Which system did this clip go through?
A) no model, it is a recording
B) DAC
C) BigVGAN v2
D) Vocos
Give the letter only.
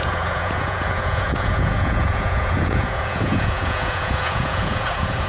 D